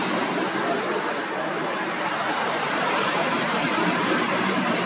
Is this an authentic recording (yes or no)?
no